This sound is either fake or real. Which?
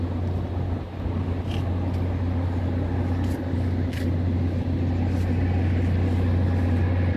real